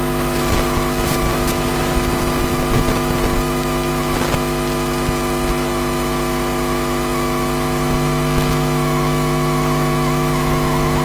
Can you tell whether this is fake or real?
real